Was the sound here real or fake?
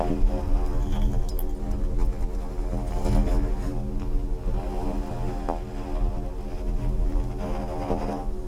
real